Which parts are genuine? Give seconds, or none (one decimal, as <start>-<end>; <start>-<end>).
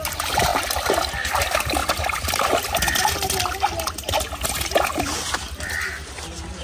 0.0-0.5; 1.1-6.6